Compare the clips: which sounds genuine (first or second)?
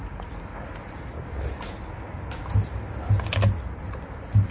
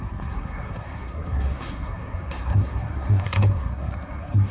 first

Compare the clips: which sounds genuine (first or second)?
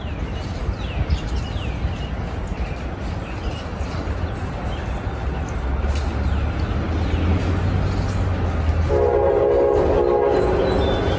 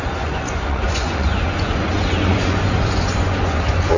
first